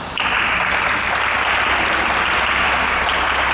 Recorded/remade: recorded